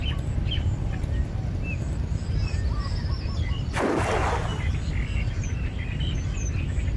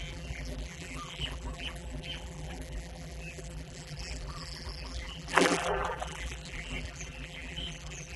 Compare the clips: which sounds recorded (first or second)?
first